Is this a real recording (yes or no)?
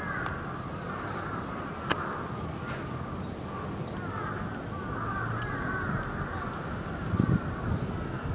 yes